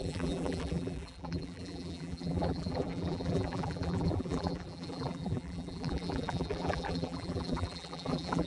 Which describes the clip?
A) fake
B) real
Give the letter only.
A